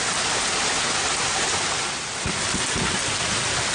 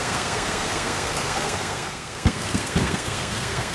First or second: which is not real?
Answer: second